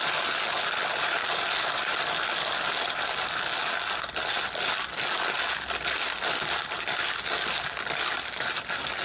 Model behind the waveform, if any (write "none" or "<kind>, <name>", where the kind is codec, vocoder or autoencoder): none